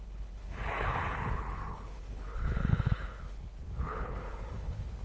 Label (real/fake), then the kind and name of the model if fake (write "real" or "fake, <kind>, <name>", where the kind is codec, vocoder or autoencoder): fake, codec, HILCodec